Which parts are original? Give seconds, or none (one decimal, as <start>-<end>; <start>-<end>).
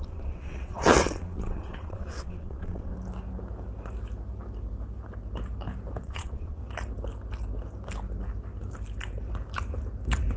2.9-6.0; 6.6-10.4